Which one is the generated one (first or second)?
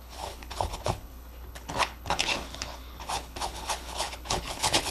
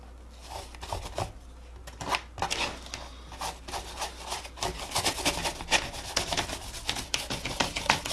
first